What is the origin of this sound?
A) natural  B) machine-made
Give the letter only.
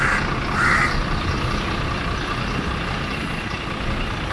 A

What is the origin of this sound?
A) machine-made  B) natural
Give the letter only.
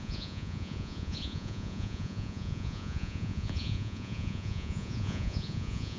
A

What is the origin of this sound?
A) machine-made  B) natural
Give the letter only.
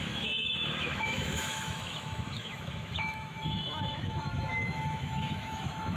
A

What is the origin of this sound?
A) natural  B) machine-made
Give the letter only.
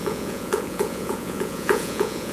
B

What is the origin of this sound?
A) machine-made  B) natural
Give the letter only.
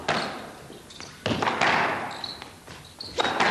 B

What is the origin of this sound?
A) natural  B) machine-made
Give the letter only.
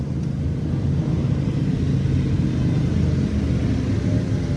A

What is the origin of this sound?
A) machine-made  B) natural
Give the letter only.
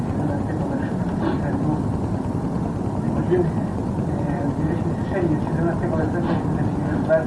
B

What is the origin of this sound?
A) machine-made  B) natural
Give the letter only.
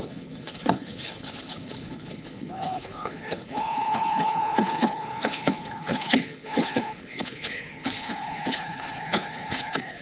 A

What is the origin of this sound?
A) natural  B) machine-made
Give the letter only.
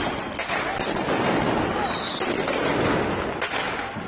A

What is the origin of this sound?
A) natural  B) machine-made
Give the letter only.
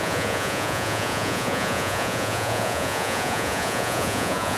B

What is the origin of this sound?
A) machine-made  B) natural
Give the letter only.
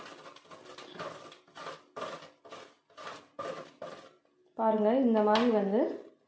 B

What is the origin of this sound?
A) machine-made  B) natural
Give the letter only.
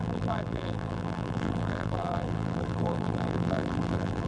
A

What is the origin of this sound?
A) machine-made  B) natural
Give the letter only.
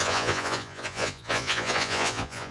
A